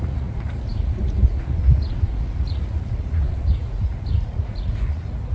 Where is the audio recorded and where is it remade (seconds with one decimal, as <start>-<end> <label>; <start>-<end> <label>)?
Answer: 0.0-5.3 remade